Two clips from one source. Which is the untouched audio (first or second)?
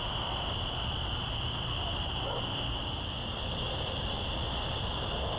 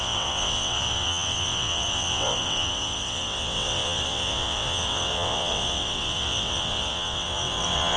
first